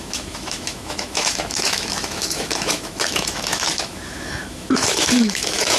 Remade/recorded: remade